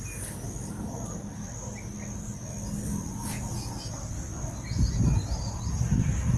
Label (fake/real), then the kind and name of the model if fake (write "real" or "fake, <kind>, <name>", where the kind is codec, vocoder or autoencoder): real